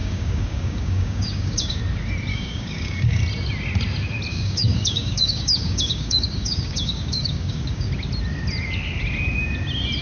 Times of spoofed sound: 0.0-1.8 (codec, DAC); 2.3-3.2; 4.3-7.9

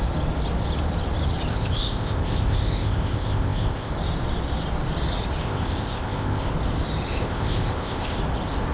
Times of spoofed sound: 1.5-3.9 (codec, ZipCodec); 5.4-6.5; 7.1-8.2

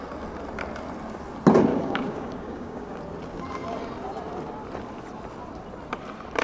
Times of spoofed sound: 1.7-3.0 (codec, DAC)

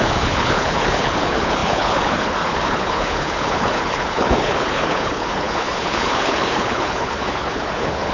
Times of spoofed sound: 0.0-8.1 (codec, HILCodec)